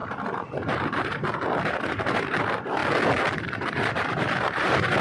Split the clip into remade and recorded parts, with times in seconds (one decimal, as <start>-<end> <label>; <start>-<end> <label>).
0.0-2.8 remade; 2.8-3.4 recorded; 3.4-5.0 remade